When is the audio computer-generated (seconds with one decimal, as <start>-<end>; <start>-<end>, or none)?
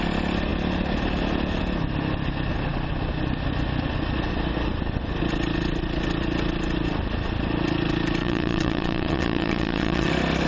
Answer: 8.2-10.1